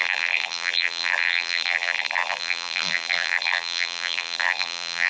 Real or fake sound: fake